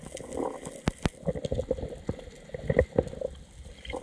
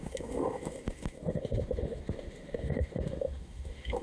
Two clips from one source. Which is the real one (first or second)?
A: first